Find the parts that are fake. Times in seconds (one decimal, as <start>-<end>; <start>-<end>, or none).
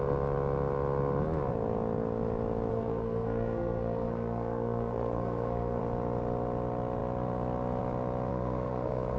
2.7-5.8; 8.3-9.2